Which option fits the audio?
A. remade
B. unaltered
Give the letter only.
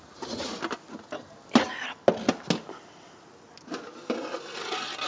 B